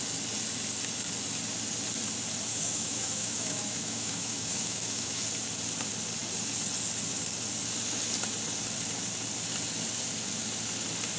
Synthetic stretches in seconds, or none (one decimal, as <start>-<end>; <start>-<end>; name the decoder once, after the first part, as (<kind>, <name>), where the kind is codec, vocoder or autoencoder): 2.5-5.2 (autoencoder, DAC-VAE)